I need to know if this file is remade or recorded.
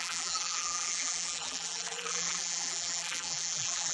remade